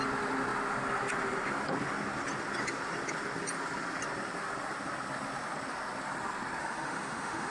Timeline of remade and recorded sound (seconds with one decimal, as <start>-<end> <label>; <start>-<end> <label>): 0.0-6.6 recorded; 6.6-7.5 remade